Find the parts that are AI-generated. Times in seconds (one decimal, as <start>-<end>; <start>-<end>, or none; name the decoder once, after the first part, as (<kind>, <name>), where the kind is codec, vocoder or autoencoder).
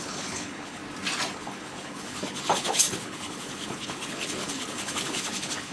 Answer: 0.0-0.8 (codec, HILCodec); 1.3-5.7